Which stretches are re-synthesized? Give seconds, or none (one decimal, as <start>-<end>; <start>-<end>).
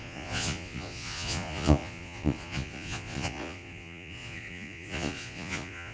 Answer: 0.0-5.9